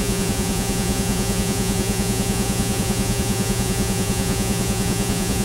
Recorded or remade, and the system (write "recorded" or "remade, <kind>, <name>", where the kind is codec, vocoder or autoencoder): remade, vocoder, Vocos